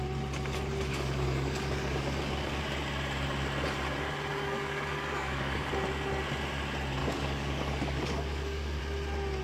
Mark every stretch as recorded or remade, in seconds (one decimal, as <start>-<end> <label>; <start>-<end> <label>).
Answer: 0.0-0.9 recorded; 0.9-2.6 remade; 2.6-4.3 recorded; 4.3-5.7 remade; 5.7-7.0 recorded; 7.0-8.8 remade; 8.8-9.4 recorded